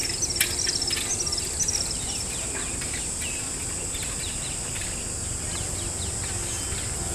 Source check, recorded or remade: recorded